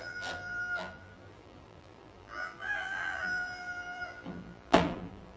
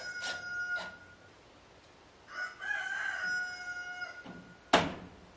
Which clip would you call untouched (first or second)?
second